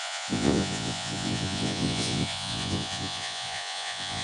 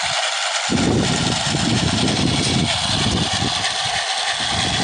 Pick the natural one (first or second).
second